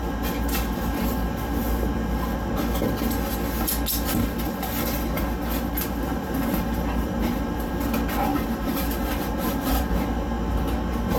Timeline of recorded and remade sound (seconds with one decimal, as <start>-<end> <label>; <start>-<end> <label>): 0.0-6.1 recorded; 6.1-7.7 remade; 7.7-8.3 recorded; 8.3-9.9 remade; 9.9-11.2 recorded